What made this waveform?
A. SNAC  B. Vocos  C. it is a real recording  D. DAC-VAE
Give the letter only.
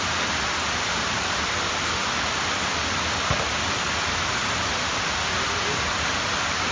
C